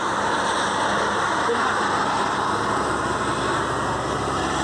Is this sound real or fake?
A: real